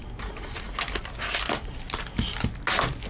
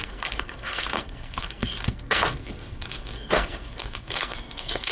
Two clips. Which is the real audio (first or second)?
first